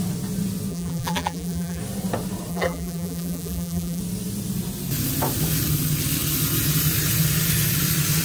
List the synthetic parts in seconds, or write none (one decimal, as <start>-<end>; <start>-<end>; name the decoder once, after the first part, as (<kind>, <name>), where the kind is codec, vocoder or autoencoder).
0.7-1.8 (vocoder, BigVGAN v2); 2.5-4.0